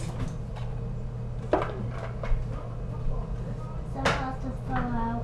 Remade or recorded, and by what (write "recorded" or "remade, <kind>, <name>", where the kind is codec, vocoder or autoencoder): recorded